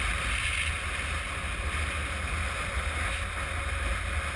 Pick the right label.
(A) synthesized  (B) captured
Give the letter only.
B